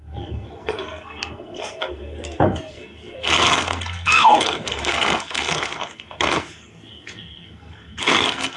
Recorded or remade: remade